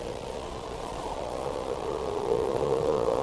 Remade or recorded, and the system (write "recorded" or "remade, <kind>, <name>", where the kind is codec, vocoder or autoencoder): remade, vocoder, Vocos